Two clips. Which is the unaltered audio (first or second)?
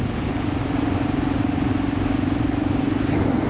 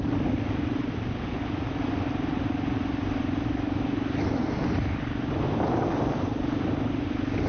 first